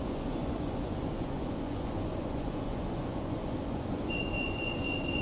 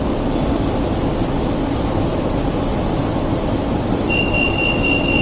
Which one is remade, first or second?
first